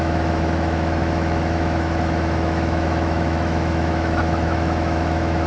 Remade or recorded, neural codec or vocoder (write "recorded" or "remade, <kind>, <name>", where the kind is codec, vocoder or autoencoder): remade, autoencoder, DAC-VAE